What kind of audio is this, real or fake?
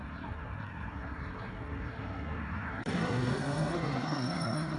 fake